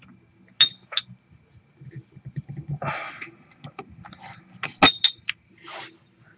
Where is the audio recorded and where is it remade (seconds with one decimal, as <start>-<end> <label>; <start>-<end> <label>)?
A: 0.0-6.4 recorded